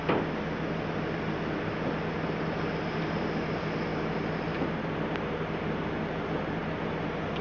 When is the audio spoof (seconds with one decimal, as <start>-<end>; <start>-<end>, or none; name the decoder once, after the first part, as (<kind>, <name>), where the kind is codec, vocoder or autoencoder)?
none